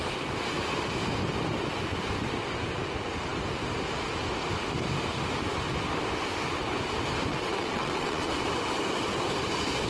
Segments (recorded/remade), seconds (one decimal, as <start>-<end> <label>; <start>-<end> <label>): 0.0-7.3 recorded; 7.3-8.3 remade; 8.3-9.9 recorded